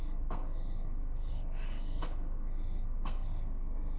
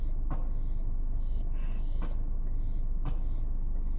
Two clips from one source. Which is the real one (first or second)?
second